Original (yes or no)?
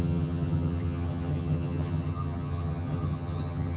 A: no